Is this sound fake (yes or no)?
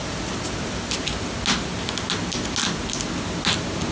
no